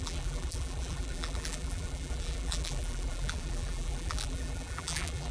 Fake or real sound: fake